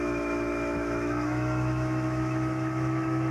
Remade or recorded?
remade